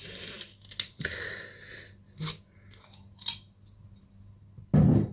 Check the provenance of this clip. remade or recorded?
recorded